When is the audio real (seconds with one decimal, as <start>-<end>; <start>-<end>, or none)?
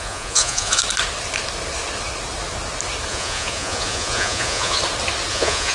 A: 0.8-3.1; 4.8-5.3